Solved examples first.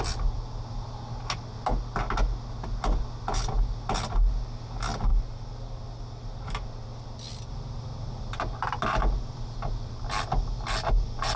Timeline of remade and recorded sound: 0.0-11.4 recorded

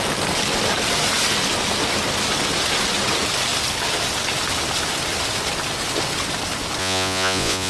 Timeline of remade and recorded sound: 0.0-6.8 recorded; 6.8-7.7 remade

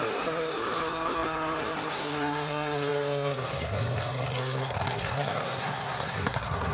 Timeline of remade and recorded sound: 0.0-6.7 remade

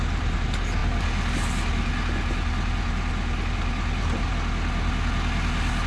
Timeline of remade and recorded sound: 0.0-5.9 recorded

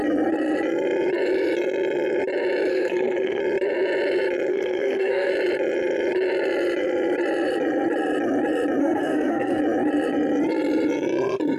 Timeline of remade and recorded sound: 0.0-2.7 recorded; 2.7-3.4 remade; 3.4-4.5 recorded; 4.5-5.3 remade; 5.3-8.8 recorded; 8.8-9.6 remade; 9.6-11.6 recorded

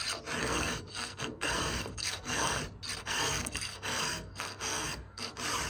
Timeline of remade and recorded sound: 0.0-0.4 recorded; 0.4-2.6 remade; 2.6-3.0 recorded; 3.0-5.3 remade; 5.3-5.7 recorded